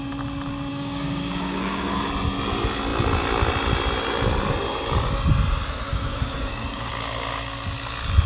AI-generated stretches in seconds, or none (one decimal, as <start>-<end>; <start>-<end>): 0.7-2.1; 5.9-6.9